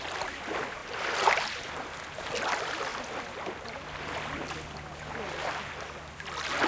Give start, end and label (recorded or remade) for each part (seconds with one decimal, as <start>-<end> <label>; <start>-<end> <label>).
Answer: 0.0-6.7 recorded